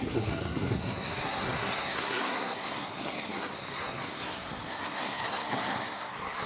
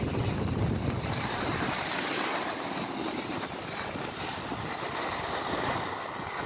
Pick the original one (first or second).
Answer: second